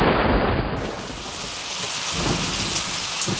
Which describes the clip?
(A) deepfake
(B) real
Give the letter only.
B